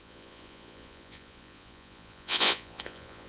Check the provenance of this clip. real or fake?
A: fake